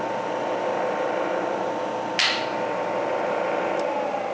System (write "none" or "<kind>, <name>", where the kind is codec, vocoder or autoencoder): none